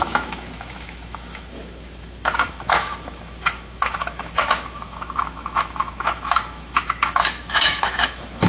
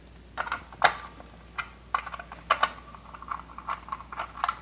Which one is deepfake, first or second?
first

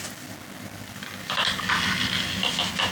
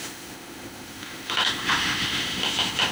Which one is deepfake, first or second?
second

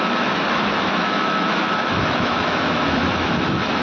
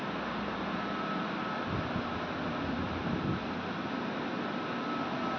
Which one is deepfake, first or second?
first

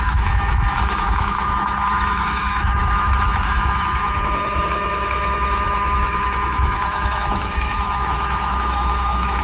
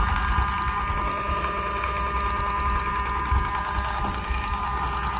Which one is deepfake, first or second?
first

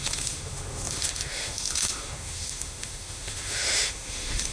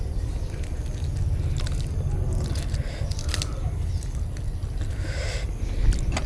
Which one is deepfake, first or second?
first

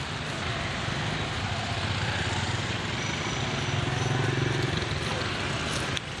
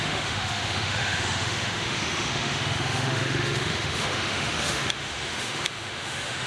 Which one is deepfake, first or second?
second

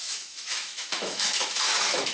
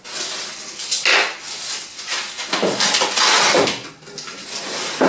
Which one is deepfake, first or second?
first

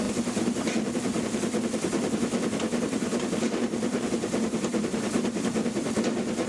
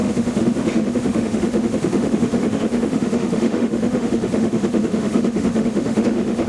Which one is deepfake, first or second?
second